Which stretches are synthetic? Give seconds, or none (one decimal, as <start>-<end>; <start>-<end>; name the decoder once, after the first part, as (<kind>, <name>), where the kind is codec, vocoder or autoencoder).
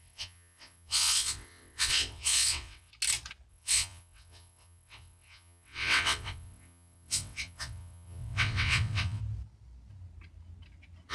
0.0-2.9 (vocoder, WaveNeXt); 3.5-9.2